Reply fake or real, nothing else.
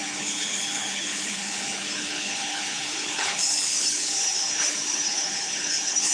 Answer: fake